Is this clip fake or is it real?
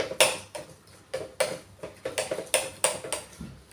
real